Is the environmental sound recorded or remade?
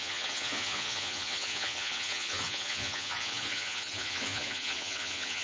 remade